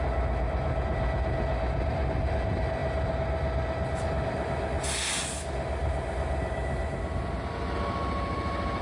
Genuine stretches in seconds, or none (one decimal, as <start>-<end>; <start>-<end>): 0.0-8.8